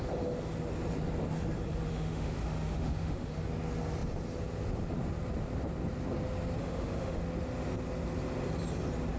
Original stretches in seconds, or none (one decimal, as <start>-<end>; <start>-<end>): 0.0-1.9; 3.3-6.6; 7.2-9.2